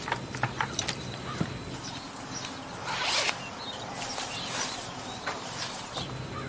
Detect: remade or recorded recorded